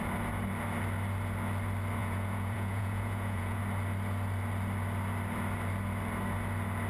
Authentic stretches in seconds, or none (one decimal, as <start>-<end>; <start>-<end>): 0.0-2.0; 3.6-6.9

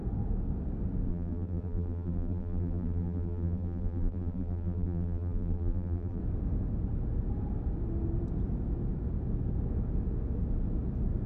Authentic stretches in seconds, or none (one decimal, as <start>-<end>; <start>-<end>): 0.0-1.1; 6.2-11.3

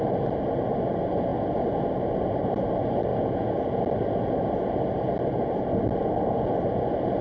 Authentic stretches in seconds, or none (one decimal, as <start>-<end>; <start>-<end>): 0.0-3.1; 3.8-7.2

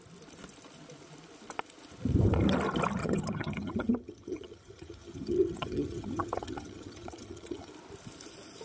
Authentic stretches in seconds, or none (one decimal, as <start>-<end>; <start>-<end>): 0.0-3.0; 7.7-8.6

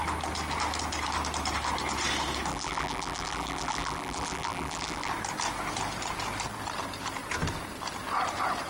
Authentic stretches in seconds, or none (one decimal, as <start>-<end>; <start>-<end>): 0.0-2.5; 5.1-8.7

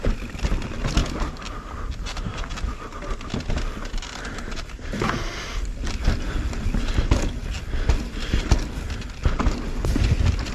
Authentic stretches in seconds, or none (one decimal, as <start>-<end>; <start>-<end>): 0.0-10.5

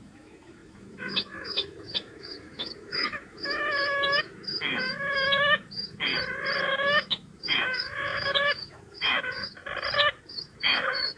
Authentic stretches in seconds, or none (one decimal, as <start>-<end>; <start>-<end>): 6.1-6.6; 9.6-10.3